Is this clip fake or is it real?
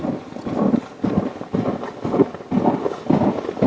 real